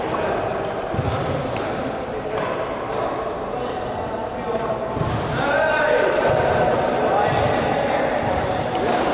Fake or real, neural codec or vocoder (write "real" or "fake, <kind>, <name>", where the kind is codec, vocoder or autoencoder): fake, vocoder, BigVGAN v2